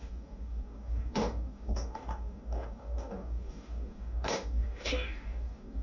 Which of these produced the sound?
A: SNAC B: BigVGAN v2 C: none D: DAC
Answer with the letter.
D